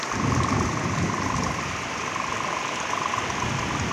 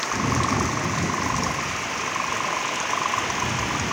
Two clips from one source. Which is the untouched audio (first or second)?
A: second